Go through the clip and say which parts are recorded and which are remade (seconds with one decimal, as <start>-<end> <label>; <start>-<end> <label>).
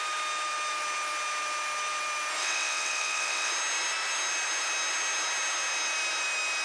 0.0-2.4 recorded; 2.4-3.5 remade; 3.5-6.6 recorded